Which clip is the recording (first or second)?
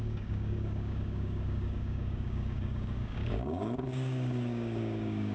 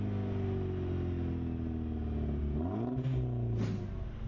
second